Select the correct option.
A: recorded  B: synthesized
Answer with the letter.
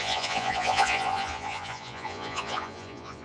B